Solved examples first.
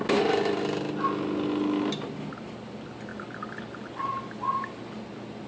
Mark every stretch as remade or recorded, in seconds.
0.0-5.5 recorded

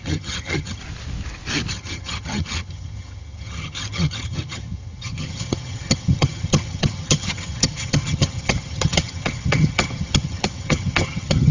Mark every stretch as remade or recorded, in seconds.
0.0-0.8 remade; 0.8-1.7 recorded; 1.7-11.5 remade